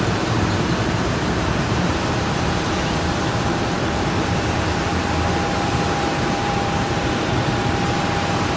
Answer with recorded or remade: remade